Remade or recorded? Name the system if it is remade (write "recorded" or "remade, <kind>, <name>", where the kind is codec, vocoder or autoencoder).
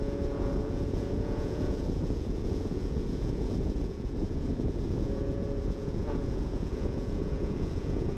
remade, vocoder, Vocos